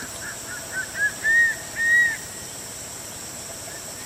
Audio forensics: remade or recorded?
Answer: recorded